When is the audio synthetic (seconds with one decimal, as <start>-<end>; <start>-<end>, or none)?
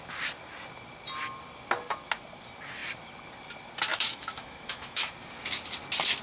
3.9-5.1